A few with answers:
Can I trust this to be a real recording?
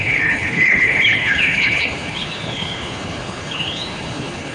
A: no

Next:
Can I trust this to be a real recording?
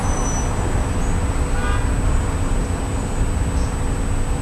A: yes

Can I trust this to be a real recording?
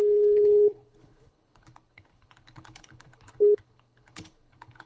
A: no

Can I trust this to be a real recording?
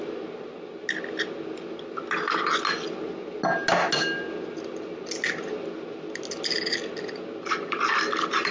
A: yes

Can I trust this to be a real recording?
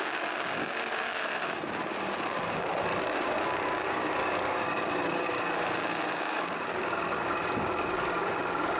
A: no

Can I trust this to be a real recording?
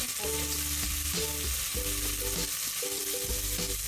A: yes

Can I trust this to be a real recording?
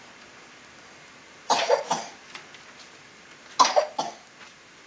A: yes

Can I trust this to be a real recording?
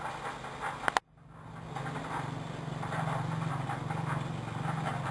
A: yes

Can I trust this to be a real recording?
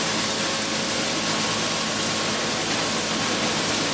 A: yes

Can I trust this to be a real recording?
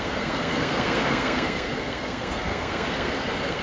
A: no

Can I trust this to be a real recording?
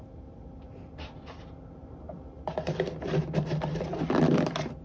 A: yes